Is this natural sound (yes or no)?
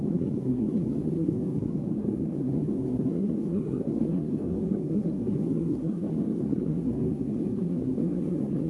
no